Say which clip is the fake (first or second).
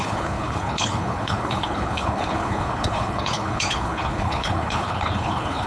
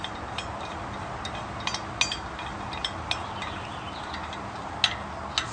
first